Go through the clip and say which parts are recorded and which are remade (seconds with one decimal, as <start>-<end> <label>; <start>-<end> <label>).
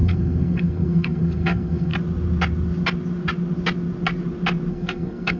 0.0-1.9 remade; 1.9-4.7 recorded; 4.7-5.4 remade